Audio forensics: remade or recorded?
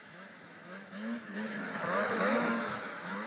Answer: remade